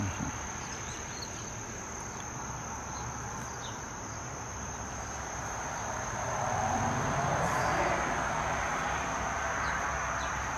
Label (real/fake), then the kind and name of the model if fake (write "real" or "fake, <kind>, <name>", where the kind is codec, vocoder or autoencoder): fake, vocoder, BigVGAN v2